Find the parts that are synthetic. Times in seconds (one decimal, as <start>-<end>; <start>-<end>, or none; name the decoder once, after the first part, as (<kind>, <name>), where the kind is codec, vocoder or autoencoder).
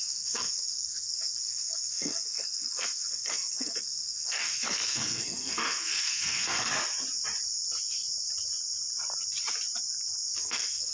0.0-6.7 (codec, SNAC); 10.4-10.9